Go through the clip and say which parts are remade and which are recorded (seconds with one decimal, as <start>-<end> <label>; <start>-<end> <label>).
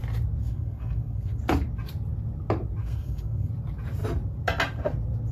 0.0-0.4 recorded; 0.4-1.4 remade; 1.4-2.8 recorded; 2.8-3.5 remade; 3.5-5.3 recorded